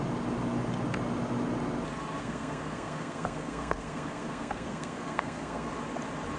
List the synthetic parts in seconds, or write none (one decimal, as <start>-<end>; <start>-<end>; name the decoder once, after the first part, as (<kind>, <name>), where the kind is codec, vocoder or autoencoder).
2.2-5.7 (codec, SNAC)